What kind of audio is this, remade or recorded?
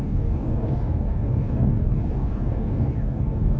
remade